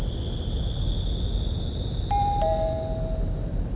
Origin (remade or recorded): recorded